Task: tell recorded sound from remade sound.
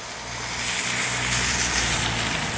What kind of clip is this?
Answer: recorded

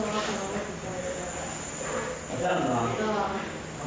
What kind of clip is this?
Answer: recorded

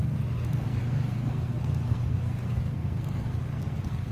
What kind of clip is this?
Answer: remade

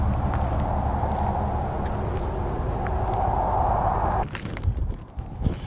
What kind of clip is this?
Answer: recorded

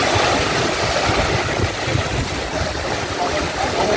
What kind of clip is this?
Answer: recorded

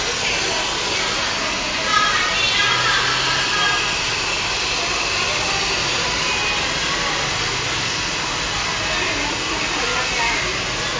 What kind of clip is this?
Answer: recorded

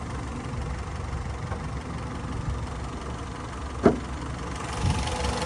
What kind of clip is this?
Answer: recorded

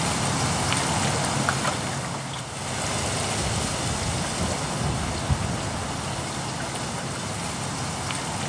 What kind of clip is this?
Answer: recorded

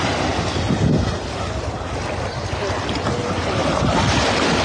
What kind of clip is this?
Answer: recorded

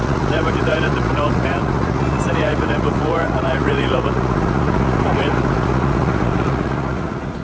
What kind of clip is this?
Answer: remade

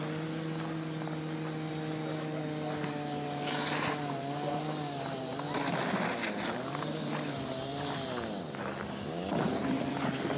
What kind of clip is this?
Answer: recorded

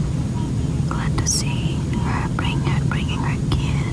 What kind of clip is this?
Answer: recorded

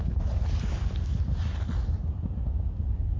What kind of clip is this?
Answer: recorded